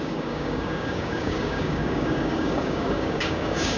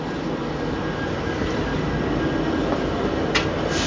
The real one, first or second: second